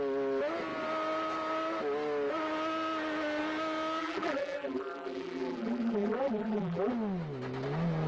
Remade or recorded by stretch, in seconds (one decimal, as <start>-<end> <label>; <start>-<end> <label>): 0.0-4.0 recorded; 4.0-6.9 remade; 6.9-8.1 recorded